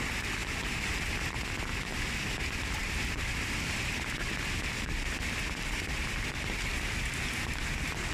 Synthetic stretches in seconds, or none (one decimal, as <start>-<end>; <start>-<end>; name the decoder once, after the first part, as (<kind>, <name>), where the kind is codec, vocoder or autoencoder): none